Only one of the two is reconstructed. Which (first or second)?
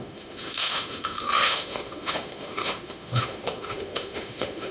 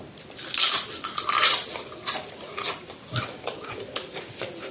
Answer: first